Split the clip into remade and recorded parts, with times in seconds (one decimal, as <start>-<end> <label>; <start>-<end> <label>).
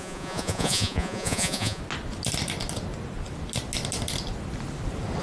0.0-1.8 remade; 1.8-5.2 recorded